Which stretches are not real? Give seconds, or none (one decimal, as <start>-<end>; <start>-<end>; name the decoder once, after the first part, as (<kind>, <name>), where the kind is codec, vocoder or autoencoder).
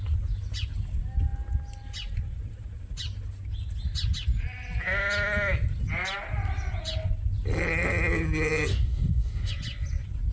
8.7-9.5 (codec, DAC)